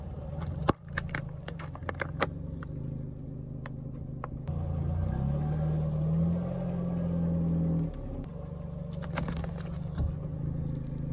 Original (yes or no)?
yes